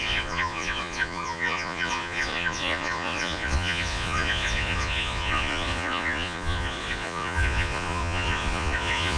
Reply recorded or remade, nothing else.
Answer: remade